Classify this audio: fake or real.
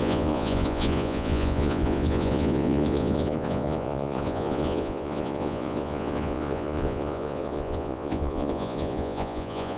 fake